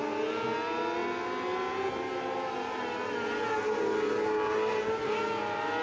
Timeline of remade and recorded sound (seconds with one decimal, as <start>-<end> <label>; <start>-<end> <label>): 0.0-5.8 recorded